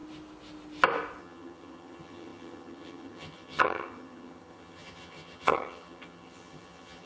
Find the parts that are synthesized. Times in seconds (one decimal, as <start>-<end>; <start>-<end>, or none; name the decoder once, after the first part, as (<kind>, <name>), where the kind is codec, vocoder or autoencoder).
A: 1.2-7.1 (vocoder, HiFi-GAN)